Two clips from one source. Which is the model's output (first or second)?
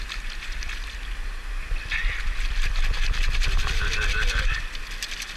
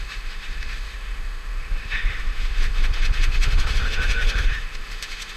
second